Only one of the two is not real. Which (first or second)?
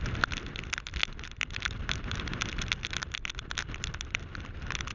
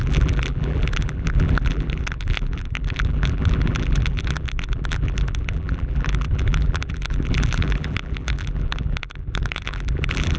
second